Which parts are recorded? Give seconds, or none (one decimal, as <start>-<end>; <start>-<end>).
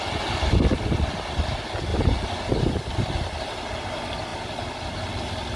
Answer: 0.0-5.6